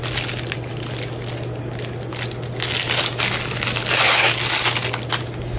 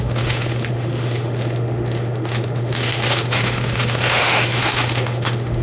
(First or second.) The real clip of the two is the first